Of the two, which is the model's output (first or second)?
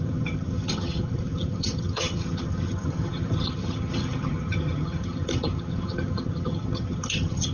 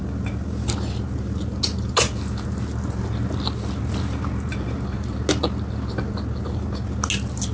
first